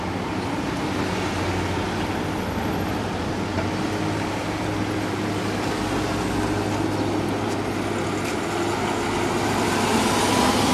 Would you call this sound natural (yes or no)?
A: yes